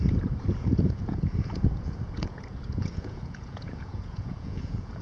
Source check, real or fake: fake